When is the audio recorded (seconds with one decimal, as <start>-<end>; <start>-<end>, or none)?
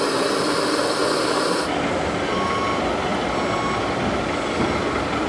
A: 0.0-5.3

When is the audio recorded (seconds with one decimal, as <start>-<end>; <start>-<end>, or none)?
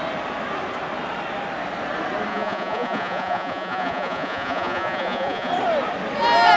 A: 0.0-2.3; 5.5-6.6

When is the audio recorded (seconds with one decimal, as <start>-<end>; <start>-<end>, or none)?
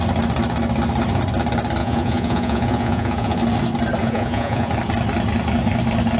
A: 0.0-1.8; 3.4-4.0; 4.7-6.2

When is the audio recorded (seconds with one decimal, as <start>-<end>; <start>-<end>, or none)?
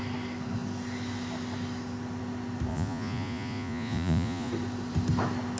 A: 0.0-2.7; 4.5-5.6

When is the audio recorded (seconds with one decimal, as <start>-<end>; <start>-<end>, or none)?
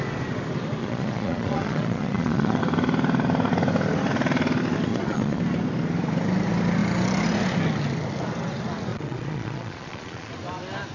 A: 0.0-0.8; 2.6-4.9; 5.4-8.9; 10.3-10.9